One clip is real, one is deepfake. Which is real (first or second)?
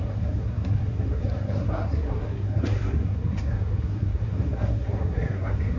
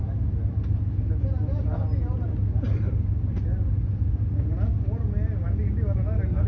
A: second